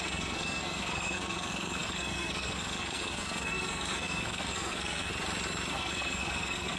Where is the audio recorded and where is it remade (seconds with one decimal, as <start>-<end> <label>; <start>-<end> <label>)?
0.0-5.1 remade; 5.1-5.7 recorded; 5.7-6.8 remade